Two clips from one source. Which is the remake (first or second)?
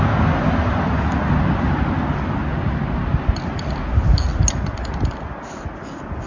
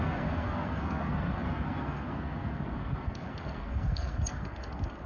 second